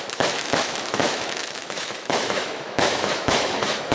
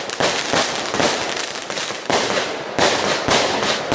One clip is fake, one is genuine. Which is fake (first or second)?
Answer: first